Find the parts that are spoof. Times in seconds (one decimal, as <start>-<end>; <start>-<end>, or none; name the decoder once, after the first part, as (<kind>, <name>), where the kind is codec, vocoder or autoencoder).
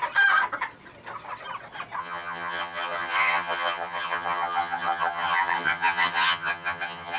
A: 2.0-7.2 (vocoder, HiFi-GAN)